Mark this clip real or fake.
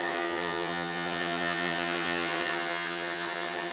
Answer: fake